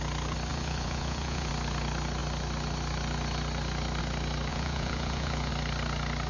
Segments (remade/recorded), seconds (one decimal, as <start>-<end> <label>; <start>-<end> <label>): 0.0-0.5 recorded; 0.5-1.5 remade; 1.5-4.5 recorded; 4.5-5.5 remade; 5.5-6.3 recorded